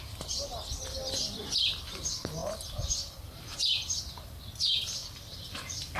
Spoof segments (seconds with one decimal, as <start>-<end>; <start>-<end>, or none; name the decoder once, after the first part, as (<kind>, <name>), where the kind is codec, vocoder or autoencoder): 0.0-2.4 (vocoder, BigVGAN v2); 3.3-6.0